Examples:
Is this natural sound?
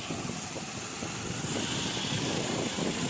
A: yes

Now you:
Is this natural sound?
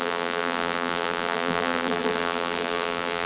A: no